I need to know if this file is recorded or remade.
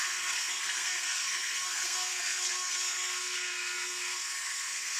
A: remade